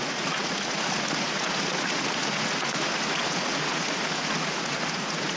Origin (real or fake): fake